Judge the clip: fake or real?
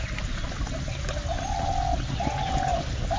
real